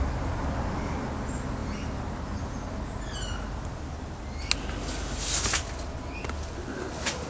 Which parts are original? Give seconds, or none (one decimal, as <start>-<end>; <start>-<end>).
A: 0.0-7.3